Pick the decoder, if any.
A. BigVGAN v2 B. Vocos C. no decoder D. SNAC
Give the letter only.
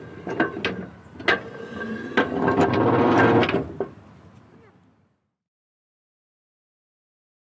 C